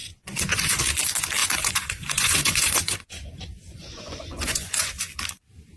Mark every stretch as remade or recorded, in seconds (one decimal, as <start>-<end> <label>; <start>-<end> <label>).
0.0-0.8 remade; 0.8-1.4 recorded; 1.4-4.9 remade; 4.9-5.8 recorded